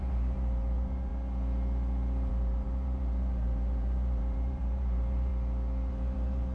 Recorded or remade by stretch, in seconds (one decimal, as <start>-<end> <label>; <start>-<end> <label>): 0.0-1.1 remade; 1.1-2.3 recorded; 2.3-5.3 remade; 5.3-5.9 recorded; 5.9-6.5 remade